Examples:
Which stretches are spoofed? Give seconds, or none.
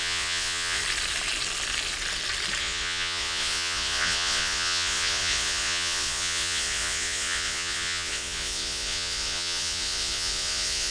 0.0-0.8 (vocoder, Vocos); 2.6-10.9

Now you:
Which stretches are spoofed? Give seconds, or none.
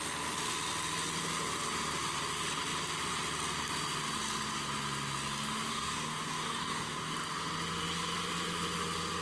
5.7-7.1 (codec, DAC)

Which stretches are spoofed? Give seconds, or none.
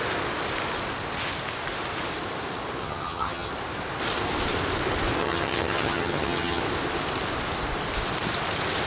2.8-3.5 (vocoder, HiFi-GAN); 5.2-6.6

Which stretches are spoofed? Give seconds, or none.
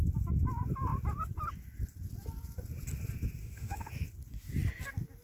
3.4-3.9 (autoencoder, DAC-VAE)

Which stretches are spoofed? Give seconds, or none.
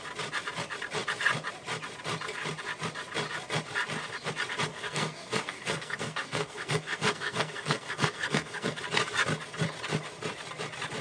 4.7-8.8 (codec, SNAC)